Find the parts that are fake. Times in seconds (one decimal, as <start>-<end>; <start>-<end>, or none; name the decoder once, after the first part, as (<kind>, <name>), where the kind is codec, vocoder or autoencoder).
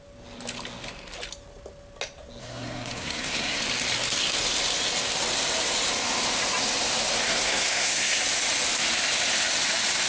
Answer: 2.4-3.6 (codec, SNAC); 7.3-8.2